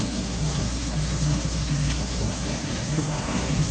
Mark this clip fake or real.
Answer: fake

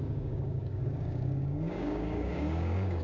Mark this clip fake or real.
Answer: fake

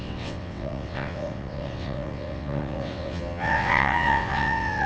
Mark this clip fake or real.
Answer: fake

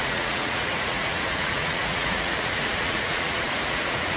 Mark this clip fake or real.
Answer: fake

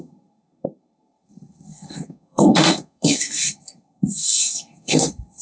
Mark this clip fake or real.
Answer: fake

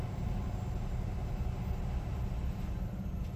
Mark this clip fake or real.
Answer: real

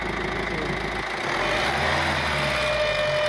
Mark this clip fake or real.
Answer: real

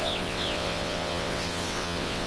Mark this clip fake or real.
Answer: fake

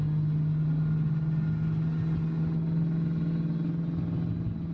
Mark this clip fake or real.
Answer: real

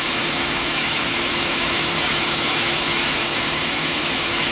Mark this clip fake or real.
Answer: fake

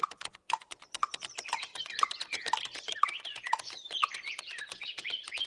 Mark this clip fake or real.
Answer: fake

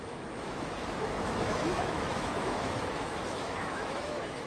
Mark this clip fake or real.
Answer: fake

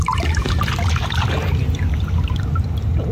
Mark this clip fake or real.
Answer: fake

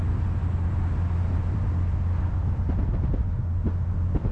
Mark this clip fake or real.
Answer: real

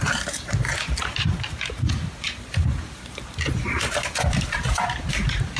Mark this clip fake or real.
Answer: fake